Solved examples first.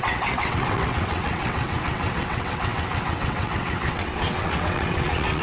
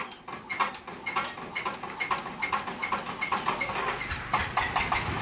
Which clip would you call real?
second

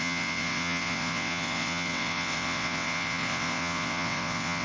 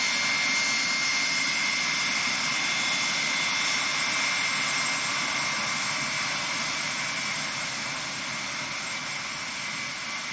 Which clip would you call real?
second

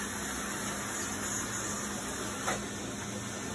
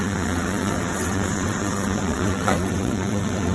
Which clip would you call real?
first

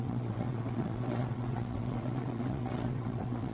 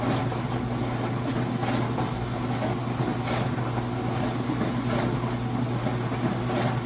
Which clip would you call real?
second